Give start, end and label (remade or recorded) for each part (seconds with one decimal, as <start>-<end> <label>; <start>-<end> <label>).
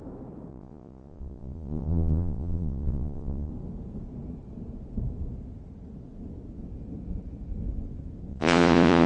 0.0-0.5 recorded; 0.5-3.5 remade; 3.5-8.3 recorded; 8.3-9.1 remade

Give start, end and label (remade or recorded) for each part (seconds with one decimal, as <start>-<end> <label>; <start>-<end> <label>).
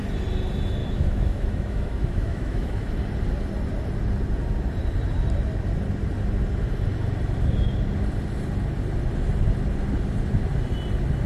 0.0-0.8 recorded; 0.8-2.9 remade; 2.9-11.3 recorded